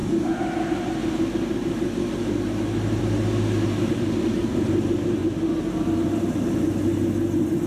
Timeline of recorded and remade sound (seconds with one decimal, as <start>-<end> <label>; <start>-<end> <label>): 0.0-7.7 recorded

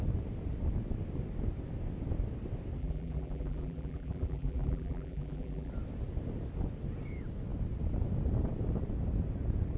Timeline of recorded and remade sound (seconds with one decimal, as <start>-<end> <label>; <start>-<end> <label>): 0.0-2.8 recorded; 2.8-5.7 remade; 5.7-9.8 recorded

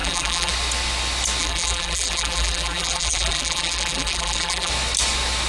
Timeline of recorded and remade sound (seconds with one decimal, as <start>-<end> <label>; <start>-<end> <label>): 0.0-0.5 remade; 0.5-1.4 recorded; 1.4-4.7 remade; 4.7-5.5 recorded

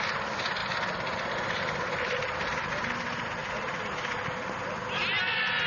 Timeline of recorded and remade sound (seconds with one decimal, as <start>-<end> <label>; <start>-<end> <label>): 0.0-0.6 recorded; 0.6-2.7 remade; 2.7-3.4 recorded; 3.4-4.4 remade; 4.4-5.7 recorded

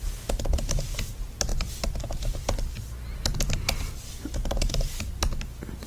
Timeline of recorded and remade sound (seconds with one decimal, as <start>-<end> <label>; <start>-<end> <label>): 0.0-5.9 recorded

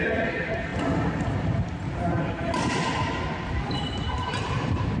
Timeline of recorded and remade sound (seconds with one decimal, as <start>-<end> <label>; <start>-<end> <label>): 0.0-0.7 remade; 0.7-3.7 recorded; 3.7-5.0 remade